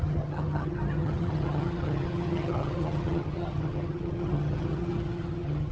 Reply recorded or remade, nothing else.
remade